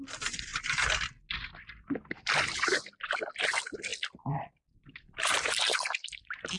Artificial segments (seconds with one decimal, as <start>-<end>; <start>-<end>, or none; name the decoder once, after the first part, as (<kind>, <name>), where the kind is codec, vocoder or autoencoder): 0.0-0.5 (vocoder, BigVGAN v2); 1.5-6.6